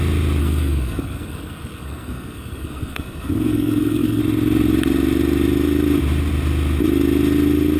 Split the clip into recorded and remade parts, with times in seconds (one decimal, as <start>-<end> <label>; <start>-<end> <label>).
0.0-0.4 recorded; 0.4-4.2 remade; 4.2-7.8 recorded